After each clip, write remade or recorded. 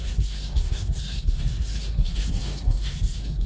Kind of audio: remade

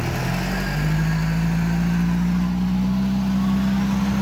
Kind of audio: recorded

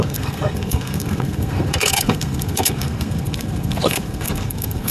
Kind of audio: remade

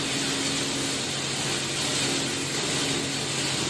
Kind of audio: recorded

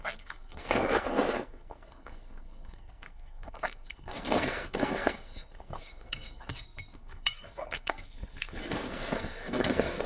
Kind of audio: remade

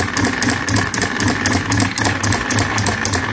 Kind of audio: recorded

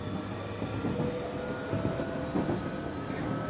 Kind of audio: recorded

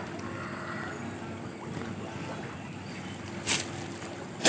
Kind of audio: recorded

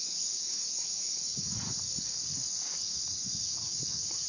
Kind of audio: remade